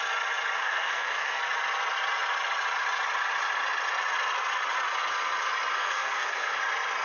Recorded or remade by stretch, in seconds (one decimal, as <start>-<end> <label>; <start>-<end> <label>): 0.0-0.6 recorded; 0.6-1.4 remade; 1.4-5.8 recorded; 5.8-6.6 remade; 6.6-7.0 recorded